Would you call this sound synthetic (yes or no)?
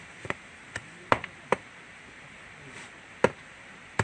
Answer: yes